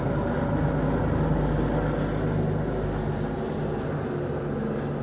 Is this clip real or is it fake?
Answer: real